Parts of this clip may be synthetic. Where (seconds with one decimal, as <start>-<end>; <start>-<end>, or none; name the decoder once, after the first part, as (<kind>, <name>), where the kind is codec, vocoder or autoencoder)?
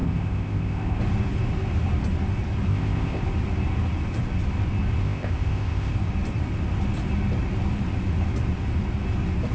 0.0-1.0 (codec, ZipCodec); 2.7-3.2; 5.0-5.9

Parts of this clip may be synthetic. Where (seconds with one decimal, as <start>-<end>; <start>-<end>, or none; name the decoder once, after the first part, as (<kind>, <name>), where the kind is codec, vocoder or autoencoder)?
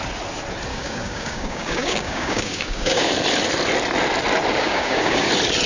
0.7-3.1 (codec, DAC); 4.6-5.3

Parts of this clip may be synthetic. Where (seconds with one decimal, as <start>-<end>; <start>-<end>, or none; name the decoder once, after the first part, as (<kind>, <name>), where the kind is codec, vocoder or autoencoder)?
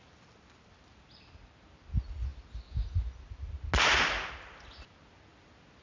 none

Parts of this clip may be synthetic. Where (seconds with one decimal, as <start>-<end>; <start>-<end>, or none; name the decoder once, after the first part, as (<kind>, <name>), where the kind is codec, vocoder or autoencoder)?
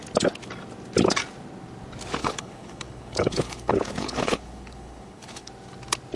2.2-5.5 (codec, HILCodec)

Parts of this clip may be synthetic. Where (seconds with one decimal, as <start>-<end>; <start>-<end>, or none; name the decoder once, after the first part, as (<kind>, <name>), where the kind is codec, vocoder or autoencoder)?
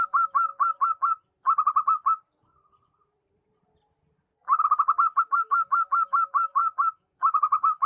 0.0-0.5 (codec, DAC); 5.2-7.9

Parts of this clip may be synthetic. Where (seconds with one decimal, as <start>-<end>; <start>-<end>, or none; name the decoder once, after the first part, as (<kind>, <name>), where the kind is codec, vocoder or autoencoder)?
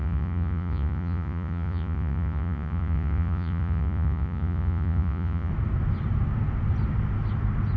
0.0-5.5 (vocoder, Vocos)